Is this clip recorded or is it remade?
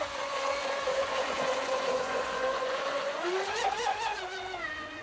remade